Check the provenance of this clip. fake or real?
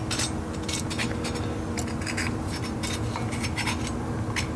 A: real